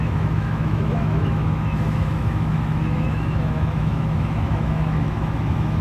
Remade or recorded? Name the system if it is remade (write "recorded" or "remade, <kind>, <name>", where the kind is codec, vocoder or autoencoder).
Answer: remade, autoencoder, DAC-VAE